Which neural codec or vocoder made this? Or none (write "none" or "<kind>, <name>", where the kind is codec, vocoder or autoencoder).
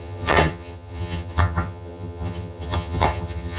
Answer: vocoder, HiFi-GAN